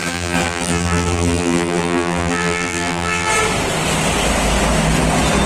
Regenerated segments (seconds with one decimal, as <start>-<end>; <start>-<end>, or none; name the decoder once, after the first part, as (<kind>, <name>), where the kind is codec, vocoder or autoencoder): 0.0-3.3 (vocoder, BigVGAN v2)